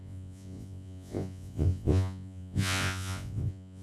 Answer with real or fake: fake